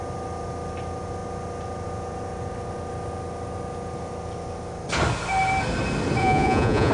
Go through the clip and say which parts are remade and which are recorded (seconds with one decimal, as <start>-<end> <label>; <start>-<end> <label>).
0.0-6.2 recorded; 6.2-6.9 remade